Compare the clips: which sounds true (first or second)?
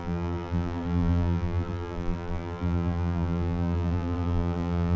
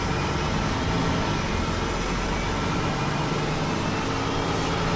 second